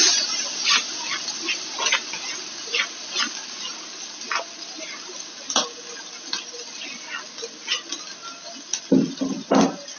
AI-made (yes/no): no